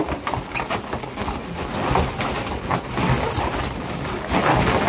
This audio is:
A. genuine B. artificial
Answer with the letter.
A